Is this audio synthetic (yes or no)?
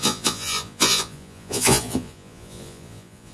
yes